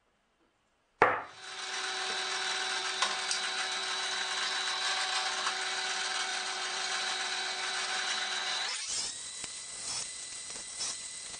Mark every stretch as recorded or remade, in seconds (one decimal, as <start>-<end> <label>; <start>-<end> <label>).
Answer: 0.0-6.3 recorded; 6.3-11.4 remade